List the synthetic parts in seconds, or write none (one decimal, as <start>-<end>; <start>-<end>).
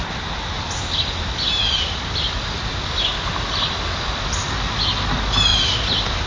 5.5-6.3